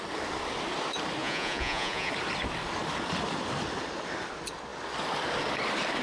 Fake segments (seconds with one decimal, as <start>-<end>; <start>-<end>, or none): 1.2-2.1